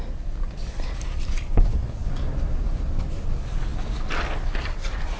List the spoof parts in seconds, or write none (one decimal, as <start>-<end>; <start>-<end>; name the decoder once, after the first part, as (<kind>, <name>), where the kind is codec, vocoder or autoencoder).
none